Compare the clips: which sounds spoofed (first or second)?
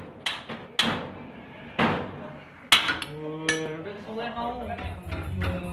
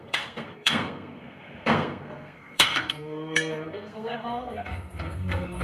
second